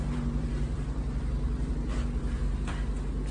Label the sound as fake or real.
fake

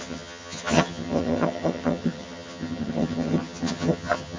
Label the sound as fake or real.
fake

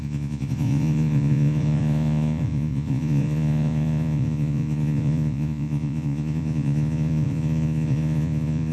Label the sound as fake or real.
fake